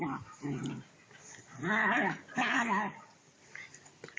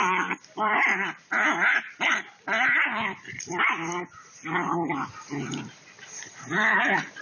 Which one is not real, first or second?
second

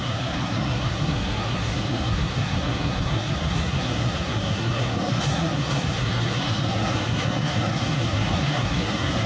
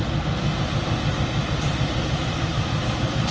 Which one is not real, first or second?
first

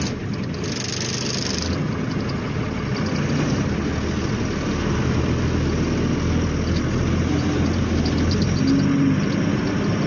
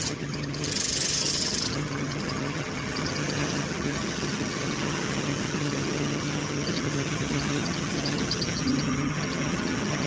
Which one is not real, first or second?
second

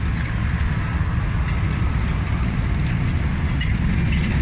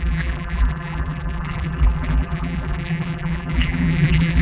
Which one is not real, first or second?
second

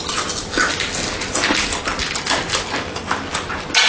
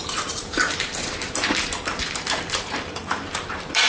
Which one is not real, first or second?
second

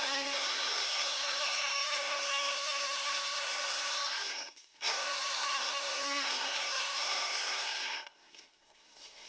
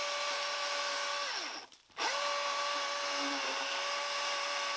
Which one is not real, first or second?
first